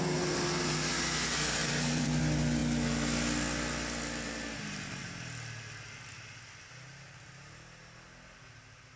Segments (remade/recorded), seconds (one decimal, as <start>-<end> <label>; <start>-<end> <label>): 0.0-1.6 recorded; 1.6-2.2 remade; 2.2-9.0 recorded